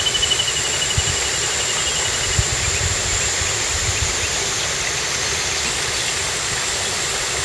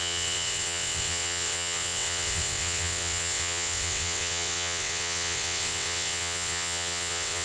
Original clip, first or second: first